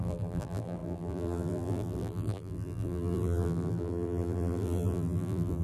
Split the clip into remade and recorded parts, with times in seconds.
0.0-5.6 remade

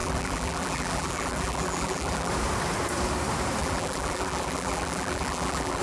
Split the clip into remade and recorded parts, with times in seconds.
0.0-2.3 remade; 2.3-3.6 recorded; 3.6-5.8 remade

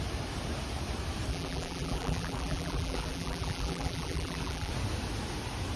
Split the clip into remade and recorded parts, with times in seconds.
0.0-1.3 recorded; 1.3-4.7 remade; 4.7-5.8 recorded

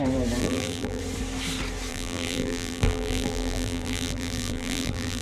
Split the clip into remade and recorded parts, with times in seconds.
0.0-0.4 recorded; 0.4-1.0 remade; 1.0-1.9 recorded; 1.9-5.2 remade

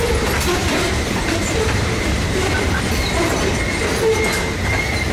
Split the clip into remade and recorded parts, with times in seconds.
0.0-0.6 recorded; 0.6-2.9 remade; 2.9-5.1 recorded

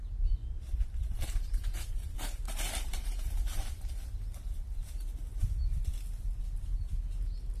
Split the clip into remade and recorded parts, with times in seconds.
0.0-0.4 recorded; 0.4-3.8 remade; 3.8-7.6 recorded